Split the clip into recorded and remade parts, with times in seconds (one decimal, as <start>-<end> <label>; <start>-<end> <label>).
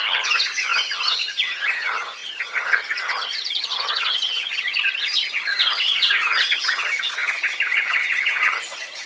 0.0-9.1 remade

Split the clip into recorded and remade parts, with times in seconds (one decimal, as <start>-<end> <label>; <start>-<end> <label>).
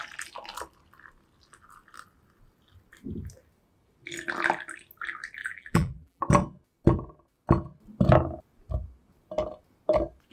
0.0-5.4 recorded; 5.4-6.2 remade; 6.2-10.3 recorded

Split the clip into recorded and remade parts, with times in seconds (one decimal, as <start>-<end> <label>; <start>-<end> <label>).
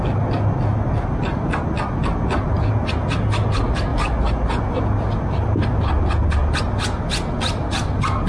0.0-8.3 recorded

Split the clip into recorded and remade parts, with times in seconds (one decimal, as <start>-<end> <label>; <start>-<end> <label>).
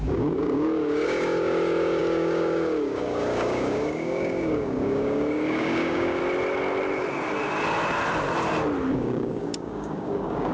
0.0-6.2 remade; 6.2-8.9 recorded; 8.9-10.5 remade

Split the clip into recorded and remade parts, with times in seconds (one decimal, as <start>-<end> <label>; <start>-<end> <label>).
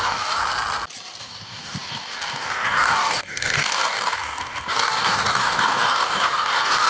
0.0-0.4 remade; 0.4-1.2 recorded; 1.2-6.9 remade